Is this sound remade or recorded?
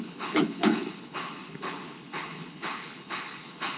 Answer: remade